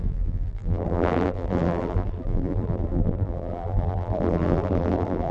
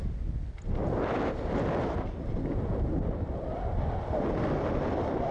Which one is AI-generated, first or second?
first